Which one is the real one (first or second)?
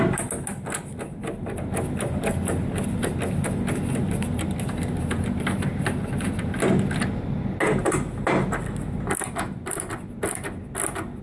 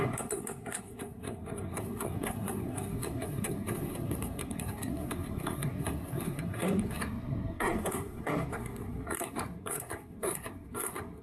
first